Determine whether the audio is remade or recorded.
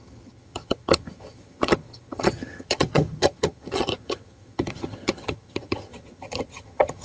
remade